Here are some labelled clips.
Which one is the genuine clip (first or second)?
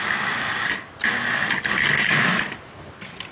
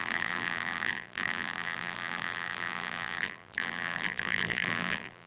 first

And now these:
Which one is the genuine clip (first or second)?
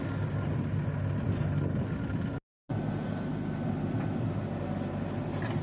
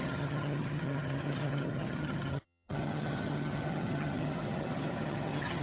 first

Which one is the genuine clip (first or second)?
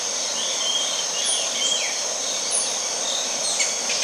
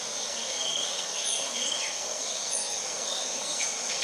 first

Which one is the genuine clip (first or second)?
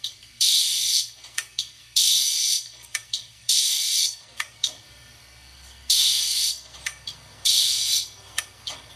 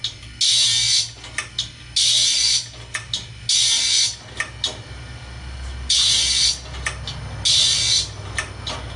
second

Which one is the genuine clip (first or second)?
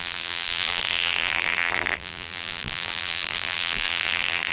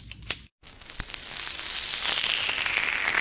second